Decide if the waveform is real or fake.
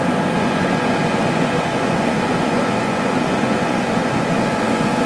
fake